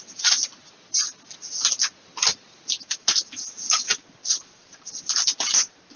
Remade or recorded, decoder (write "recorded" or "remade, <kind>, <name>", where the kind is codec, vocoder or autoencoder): recorded